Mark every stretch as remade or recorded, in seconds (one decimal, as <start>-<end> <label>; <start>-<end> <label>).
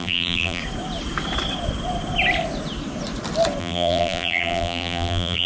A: 0.0-0.6 remade; 0.6-3.6 recorded; 3.6-5.5 remade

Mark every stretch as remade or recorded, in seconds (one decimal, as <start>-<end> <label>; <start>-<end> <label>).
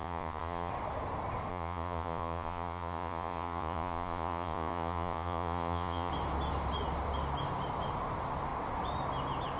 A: 0.0-0.7 remade; 0.7-1.5 recorded; 1.5-6.1 remade; 6.1-9.6 recorded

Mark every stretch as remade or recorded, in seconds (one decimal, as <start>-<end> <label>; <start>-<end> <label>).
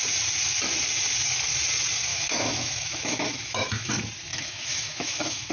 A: 0.0-2.1 recorded; 2.1-3.9 remade; 3.9-4.3 recorded; 4.3-5.5 remade